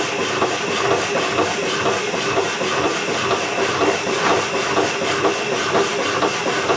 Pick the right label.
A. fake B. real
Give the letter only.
B